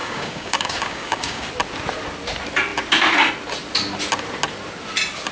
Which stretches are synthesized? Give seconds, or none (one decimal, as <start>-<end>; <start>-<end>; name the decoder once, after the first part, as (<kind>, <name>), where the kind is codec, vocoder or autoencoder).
0.0-1.5 (codec, DAC)